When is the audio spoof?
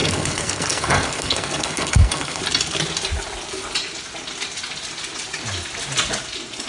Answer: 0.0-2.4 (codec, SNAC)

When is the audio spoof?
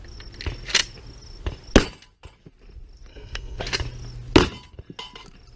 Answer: 3.1-3.6 (codec, SNAC)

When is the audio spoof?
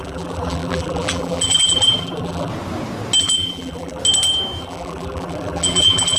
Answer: 0.0-2.5 (vocoder, BigVGAN v2); 3.2-4.0; 4.6-6.2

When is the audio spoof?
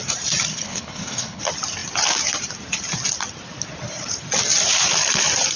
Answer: 0.5-1.4 (codec, HILCodec)